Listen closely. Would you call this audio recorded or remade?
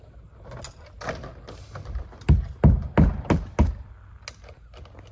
recorded